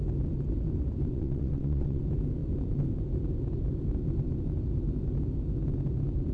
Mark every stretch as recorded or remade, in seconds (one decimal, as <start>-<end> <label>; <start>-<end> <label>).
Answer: 0.0-1.1 recorded; 1.1-2.0 remade; 2.0-6.3 recorded